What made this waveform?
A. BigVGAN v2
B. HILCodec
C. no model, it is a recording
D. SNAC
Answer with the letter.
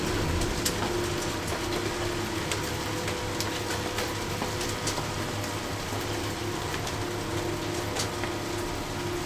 C